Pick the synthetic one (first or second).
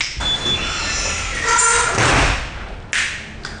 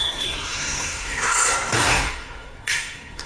second